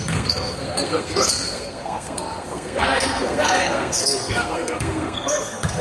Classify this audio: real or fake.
fake